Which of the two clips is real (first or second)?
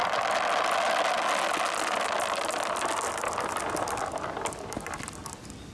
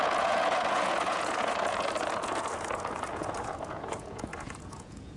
first